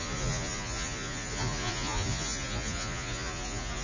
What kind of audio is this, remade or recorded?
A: remade